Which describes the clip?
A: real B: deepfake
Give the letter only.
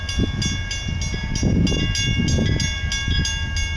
A